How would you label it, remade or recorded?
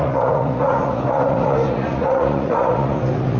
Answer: remade